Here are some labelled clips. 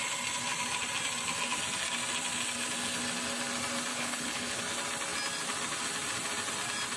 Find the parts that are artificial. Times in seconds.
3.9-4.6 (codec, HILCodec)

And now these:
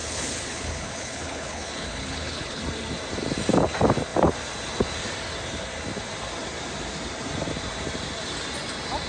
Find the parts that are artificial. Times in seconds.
0.0-2.6 (codec, HILCodec)

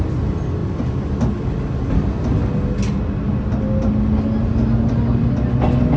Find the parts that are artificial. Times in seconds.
none

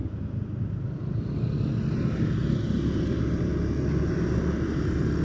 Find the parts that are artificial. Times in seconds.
none

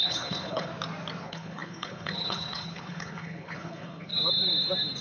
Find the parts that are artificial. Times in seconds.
0.0-0.7 (codec, HILCodec); 1.2-4.1

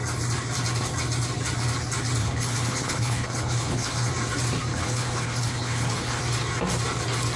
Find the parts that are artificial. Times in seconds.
2.2-4.1 (codec, HILCodec); 4.7-6.2

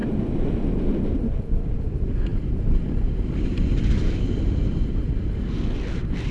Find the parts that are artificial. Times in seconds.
none

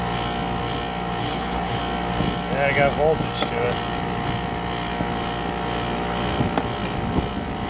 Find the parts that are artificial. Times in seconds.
1.2-1.8 (codec, HILCodec)